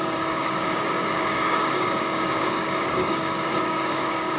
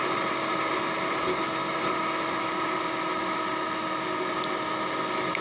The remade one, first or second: first